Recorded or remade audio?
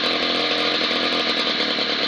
recorded